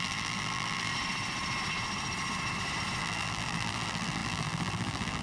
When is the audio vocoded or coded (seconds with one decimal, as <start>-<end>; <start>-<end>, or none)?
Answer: 0.0-0.9; 3.0-5.2